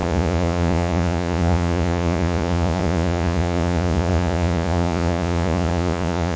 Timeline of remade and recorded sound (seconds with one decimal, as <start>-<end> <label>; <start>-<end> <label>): 0.0-6.4 remade